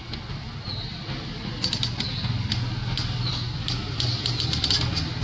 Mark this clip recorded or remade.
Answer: recorded